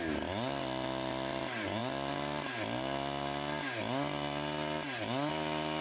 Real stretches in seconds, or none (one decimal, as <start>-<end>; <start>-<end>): 0.0-5.8